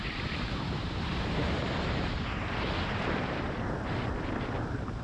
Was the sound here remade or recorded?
remade